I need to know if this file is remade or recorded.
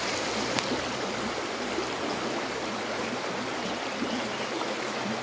recorded